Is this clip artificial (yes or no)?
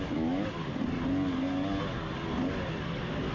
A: no